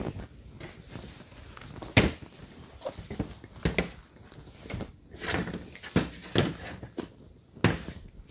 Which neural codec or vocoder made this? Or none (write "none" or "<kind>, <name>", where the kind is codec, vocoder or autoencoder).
none